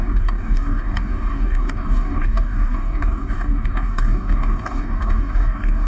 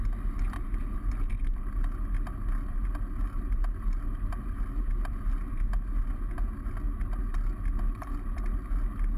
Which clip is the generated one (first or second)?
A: first